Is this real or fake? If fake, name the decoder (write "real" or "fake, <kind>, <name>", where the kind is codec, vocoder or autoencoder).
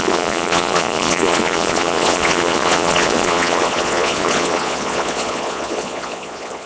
fake, vocoder, Vocos